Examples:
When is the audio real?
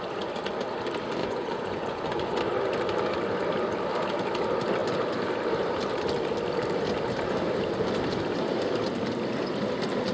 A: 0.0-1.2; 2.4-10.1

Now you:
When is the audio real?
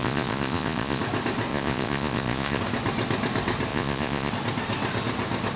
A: 1.0-1.5; 2.6-3.7; 4.3-5.6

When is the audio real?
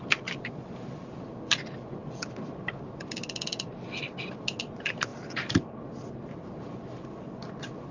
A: 0.0-7.9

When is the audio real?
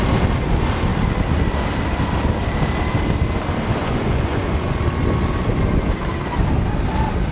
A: 0.0-3.8; 4.8-7.3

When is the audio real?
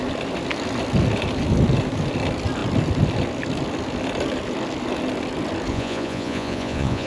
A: 0.0-5.7